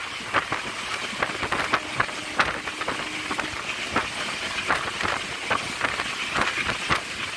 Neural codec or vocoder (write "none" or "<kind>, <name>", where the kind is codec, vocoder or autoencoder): none